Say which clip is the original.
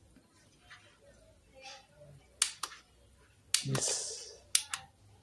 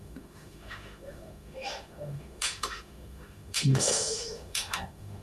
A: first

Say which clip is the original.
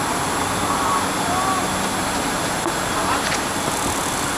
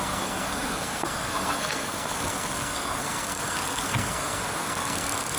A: first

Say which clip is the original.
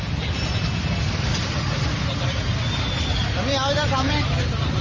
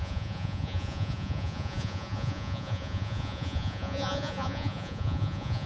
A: first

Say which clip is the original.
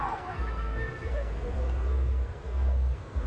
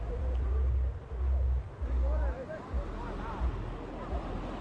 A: second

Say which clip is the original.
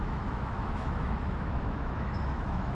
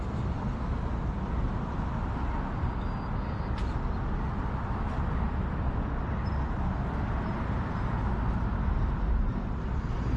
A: second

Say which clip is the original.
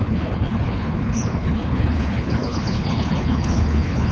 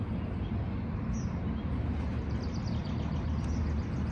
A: second